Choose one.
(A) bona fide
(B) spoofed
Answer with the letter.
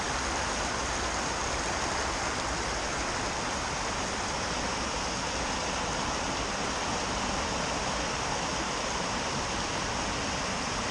A